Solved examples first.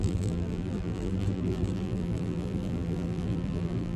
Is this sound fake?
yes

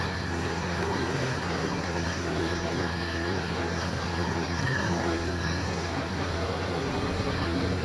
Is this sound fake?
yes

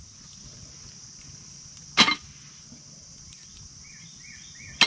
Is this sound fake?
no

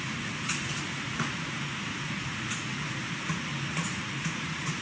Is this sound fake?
yes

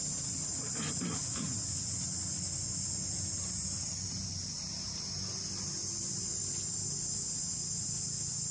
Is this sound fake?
no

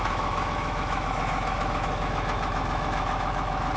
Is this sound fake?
yes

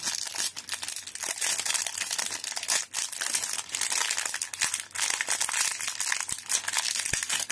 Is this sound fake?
no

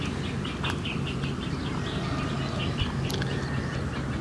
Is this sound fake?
no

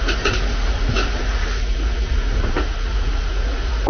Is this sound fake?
yes